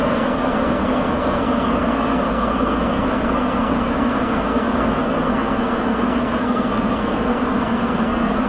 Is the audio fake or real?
fake